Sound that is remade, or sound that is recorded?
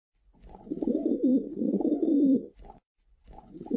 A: remade